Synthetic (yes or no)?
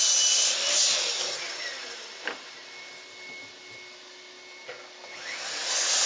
no